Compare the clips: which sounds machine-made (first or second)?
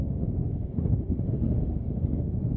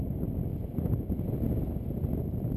first